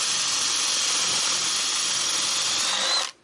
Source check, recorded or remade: recorded